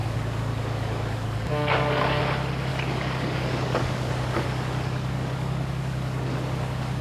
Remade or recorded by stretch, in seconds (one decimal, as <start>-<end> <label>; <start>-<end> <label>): 0.0-2.2 remade; 2.2-2.7 recorded; 2.7-7.0 remade